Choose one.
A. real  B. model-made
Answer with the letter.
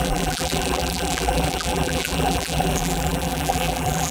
B